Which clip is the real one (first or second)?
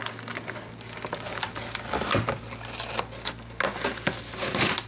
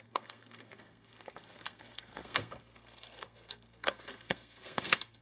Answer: first